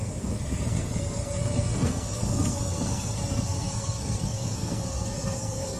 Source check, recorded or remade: remade